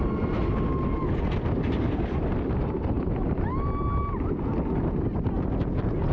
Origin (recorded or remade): recorded